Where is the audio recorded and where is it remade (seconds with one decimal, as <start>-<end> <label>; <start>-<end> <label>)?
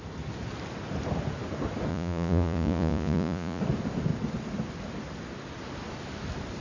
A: 0.0-1.9 recorded; 1.9-3.6 remade; 3.6-6.6 recorded